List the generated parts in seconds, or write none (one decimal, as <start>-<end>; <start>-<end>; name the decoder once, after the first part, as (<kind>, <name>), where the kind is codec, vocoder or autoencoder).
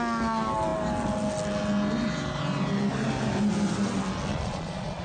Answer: 4.3-5.0 (vocoder, Vocos)